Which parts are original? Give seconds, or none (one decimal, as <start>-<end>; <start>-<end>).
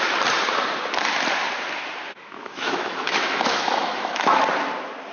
0.0-2.2; 4.4-5.1